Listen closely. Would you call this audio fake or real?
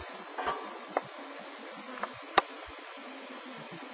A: real